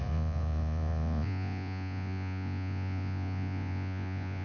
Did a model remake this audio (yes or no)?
yes